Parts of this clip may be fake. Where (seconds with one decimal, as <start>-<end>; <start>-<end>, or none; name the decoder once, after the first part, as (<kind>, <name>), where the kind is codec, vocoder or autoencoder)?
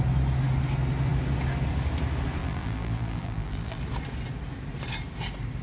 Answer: 2.4-3.8 (vocoder, BigVGAN v2)